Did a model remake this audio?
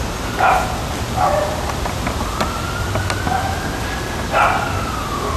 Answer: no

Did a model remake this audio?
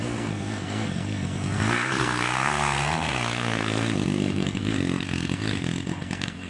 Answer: yes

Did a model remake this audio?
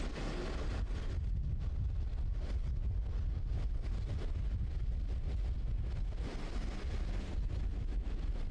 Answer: no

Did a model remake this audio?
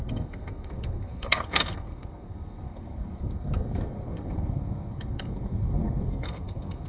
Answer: yes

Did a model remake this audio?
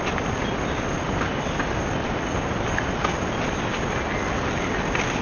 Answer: no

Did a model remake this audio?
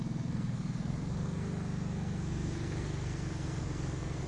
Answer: yes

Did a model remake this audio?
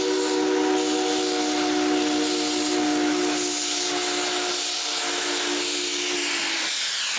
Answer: no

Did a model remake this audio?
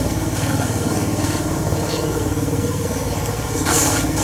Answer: yes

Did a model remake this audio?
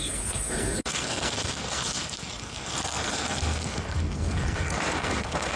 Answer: yes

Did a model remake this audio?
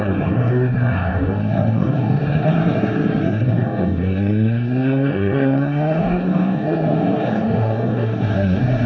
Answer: yes